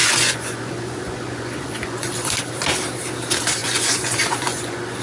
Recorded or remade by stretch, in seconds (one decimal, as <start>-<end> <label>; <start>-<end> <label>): 0.0-2.4 remade; 2.4-3.6 recorded; 3.6-5.0 remade